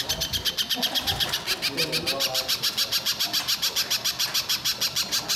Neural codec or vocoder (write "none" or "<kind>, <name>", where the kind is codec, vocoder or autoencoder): none